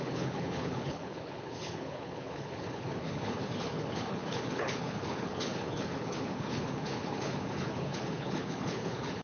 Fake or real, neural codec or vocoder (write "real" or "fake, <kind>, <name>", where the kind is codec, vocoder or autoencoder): fake, codec, HILCodec